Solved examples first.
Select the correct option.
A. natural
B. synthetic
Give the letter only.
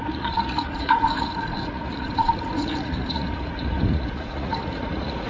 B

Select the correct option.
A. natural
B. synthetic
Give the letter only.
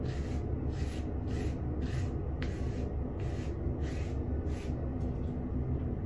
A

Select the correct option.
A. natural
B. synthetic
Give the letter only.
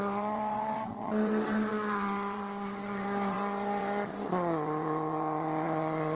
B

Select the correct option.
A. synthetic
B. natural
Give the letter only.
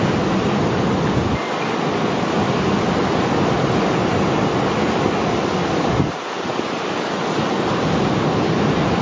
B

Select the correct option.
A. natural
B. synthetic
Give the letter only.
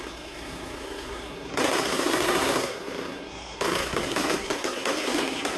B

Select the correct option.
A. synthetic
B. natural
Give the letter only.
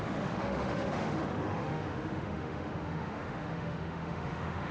A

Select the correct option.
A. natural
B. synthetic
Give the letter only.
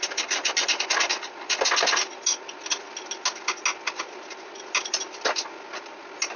A